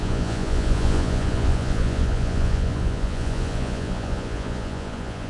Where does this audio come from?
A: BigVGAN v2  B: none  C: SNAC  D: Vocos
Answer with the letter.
D